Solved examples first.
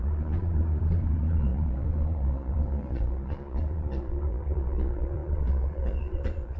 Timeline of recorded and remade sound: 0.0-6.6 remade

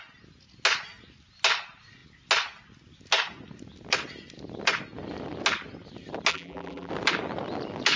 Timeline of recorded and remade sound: 0.0-6.3 recorded; 6.3-6.9 remade; 6.9-8.0 recorded